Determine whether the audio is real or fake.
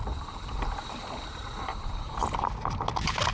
real